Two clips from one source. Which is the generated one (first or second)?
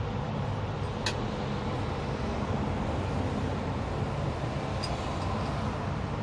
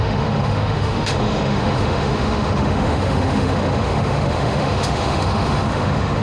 second